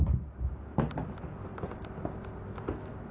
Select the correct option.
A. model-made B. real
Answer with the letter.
B